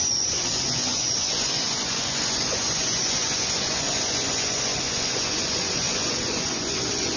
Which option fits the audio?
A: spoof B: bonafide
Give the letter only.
A